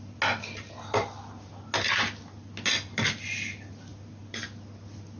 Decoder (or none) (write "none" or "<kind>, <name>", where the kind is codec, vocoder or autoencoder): none